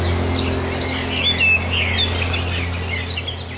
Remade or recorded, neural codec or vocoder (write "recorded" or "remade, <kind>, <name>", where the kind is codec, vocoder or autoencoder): recorded